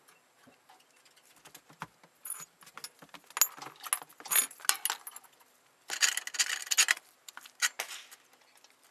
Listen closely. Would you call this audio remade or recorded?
recorded